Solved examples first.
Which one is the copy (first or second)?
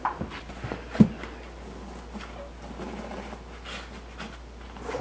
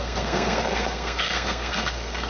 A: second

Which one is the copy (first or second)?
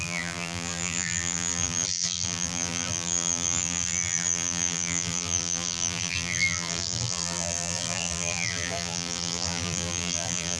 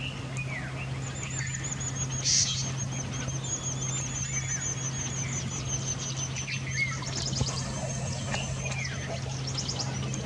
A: first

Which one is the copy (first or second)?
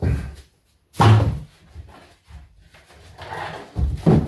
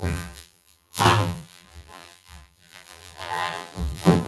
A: second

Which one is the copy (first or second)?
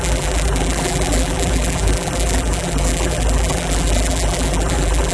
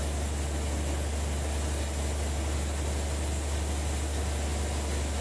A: first